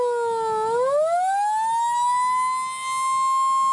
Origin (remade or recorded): recorded